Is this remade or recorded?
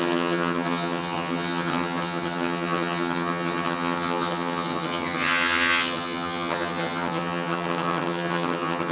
remade